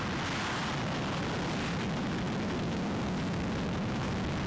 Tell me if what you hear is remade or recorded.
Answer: recorded